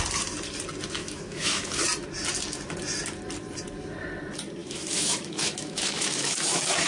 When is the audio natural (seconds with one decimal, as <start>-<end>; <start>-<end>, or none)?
0.0-1.0; 1.8-4.6